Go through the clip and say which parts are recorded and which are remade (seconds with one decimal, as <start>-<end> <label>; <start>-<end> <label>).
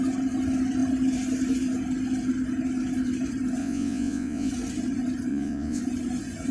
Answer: 0.0-3.6 recorded; 3.6-4.5 remade; 4.5-5.3 recorded; 5.3-5.8 remade; 5.8-6.5 recorded